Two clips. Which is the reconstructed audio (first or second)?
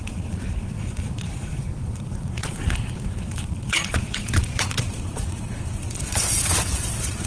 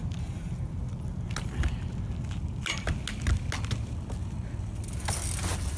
first